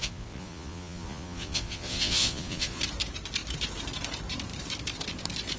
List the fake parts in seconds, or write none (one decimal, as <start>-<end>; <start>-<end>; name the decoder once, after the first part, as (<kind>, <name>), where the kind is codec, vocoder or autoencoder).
0.0-2.8 (vocoder, Vocos)